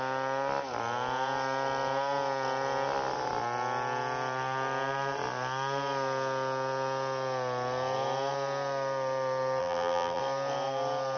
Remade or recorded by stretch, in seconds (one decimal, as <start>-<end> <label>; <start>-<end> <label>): 0.0-9.6 recorded; 9.6-10.2 remade; 10.2-11.2 recorded